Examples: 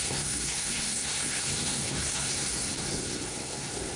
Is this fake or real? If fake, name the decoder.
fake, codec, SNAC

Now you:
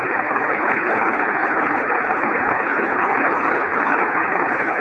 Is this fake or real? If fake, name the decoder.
fake, codec, HILCodec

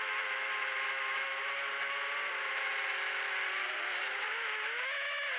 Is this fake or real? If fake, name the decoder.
real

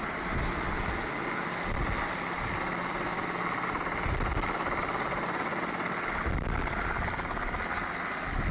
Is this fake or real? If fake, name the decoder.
real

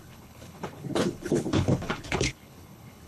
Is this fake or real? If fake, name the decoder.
fake, codec, HILCodec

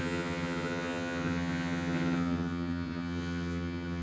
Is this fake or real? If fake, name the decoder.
fake, vocoder, HiFi-GAN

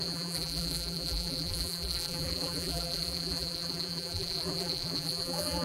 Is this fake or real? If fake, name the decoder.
fake, vocoder, BigVGAN v2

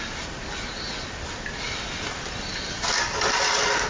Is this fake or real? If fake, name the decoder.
real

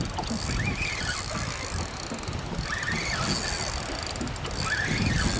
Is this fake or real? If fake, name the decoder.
real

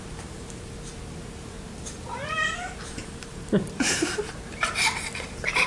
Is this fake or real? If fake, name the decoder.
fake, vocoder, BigVGAN v2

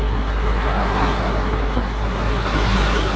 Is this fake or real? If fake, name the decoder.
fake, codec, SNAC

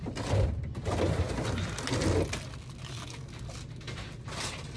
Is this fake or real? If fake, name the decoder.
real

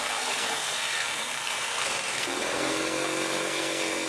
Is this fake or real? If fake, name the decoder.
fake, codec, SNAC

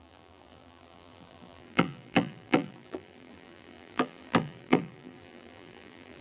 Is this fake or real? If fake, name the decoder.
fake, vocoder, BigVGAN v2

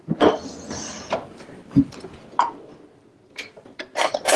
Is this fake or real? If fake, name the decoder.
real